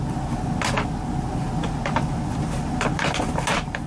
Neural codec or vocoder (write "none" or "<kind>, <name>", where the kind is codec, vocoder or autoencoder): none